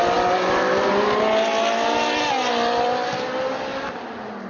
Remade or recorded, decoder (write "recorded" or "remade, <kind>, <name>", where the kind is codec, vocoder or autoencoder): recorded